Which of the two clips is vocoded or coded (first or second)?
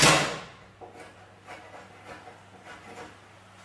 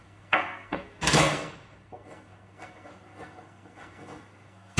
second